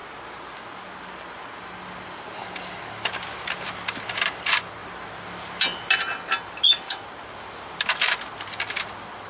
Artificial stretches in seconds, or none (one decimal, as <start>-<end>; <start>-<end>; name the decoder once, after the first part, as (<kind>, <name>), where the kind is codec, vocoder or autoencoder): none